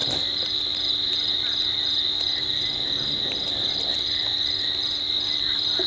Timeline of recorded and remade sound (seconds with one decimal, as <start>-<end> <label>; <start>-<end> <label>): 0.0-4.3 remade; 4.3-5.9 recorded